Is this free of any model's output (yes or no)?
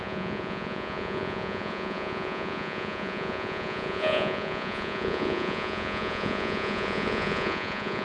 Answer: no